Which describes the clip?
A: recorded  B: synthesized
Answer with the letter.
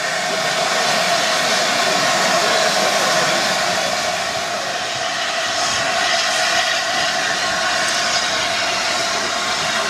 A